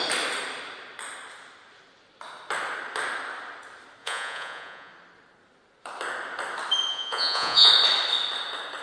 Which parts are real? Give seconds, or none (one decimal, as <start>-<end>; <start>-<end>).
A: 0.0-4.0; 4.9-6.9; 7.7-8.8